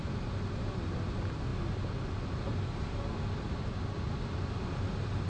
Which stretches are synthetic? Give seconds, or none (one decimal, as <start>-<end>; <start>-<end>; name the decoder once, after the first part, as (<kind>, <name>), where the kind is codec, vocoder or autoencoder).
none